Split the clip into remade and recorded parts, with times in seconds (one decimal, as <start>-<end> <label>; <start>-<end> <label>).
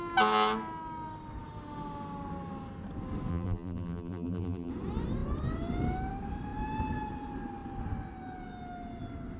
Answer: 0.0-3.3 recorded; 3.3-4.7 remade; 4.7-9.4 recorded